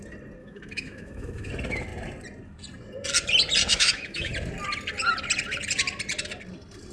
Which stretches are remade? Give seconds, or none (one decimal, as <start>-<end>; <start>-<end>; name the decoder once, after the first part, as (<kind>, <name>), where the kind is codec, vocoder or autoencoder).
0.4-1.5 (autoencoder, DAC-VAE); 3.7-4.3